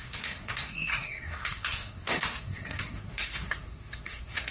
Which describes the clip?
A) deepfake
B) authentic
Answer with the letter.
A